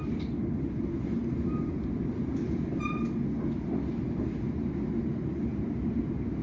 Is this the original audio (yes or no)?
yes